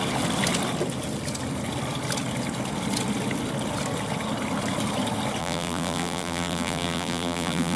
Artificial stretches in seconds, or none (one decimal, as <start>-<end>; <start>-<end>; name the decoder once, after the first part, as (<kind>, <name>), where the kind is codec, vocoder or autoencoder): 5.4-7.8 (vocoder, BigVGAN v2)